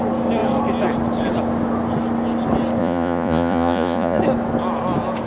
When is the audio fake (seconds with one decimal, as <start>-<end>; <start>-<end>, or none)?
2.8-4.2